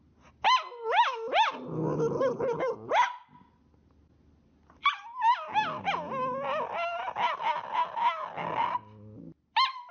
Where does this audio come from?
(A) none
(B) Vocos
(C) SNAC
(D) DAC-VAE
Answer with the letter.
A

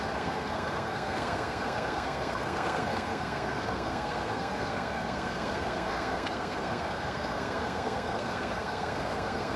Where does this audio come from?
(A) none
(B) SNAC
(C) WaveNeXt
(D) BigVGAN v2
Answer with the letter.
B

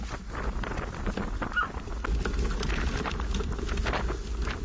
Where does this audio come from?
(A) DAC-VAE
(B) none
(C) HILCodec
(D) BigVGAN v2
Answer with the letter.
B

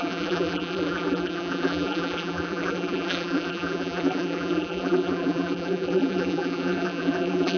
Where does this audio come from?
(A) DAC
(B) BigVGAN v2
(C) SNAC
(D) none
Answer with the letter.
B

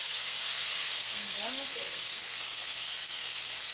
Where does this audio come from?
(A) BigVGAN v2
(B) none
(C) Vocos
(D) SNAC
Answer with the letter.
D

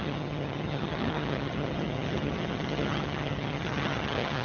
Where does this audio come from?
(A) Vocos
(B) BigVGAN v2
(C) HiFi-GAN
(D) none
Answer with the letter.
C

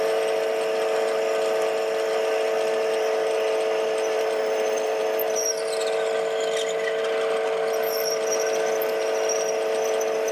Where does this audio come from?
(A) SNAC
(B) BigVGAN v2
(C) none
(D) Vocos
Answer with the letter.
C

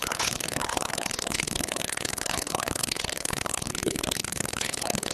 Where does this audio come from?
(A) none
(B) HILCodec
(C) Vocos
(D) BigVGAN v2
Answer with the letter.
B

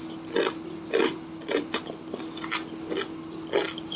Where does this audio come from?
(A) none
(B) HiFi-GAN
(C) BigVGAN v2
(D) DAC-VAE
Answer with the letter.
A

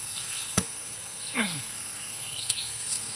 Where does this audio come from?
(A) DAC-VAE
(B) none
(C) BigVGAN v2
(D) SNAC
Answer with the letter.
D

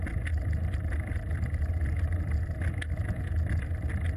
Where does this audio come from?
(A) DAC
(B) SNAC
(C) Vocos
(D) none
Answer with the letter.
D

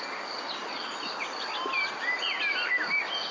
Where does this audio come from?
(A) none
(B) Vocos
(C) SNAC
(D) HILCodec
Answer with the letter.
A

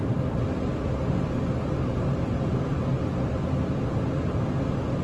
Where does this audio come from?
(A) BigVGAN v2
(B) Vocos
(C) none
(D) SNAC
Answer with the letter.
C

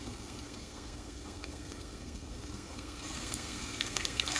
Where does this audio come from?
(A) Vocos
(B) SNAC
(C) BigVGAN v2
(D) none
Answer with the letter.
B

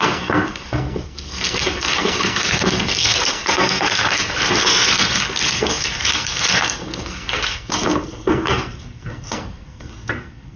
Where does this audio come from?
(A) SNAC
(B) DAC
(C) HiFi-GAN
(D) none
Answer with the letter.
A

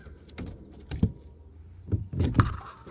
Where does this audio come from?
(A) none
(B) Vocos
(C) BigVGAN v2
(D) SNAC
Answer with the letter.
A